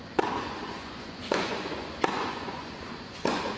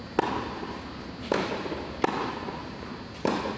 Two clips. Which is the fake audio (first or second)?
first